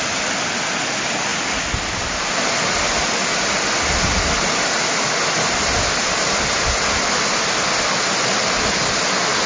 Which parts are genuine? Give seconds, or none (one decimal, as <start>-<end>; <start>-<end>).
0.0-9.5